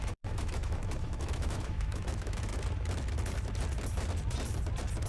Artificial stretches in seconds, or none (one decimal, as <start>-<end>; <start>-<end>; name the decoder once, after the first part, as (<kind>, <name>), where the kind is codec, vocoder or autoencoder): 0.0-2.5 (autoencoder, DAC-VAE)